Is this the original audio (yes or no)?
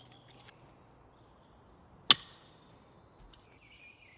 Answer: yes